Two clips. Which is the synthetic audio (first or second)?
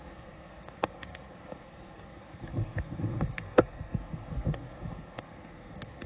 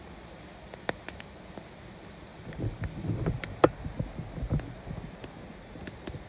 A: first